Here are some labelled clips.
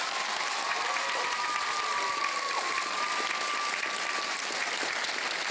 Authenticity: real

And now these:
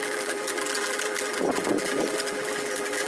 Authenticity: fake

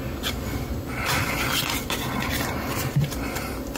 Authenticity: real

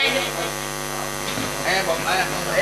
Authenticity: real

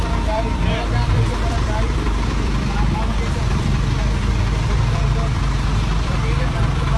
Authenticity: fake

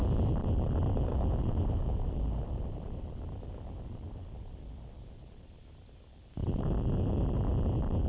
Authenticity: fake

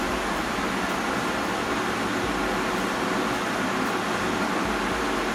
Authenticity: real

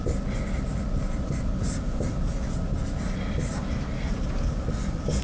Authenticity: real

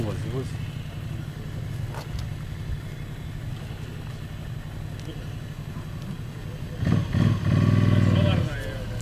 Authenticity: real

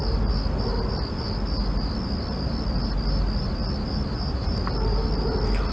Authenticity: real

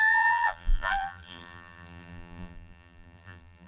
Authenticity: fake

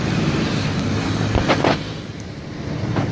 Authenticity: real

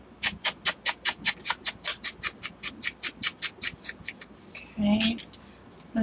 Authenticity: real